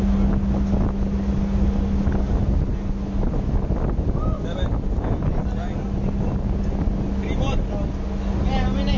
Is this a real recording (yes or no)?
yes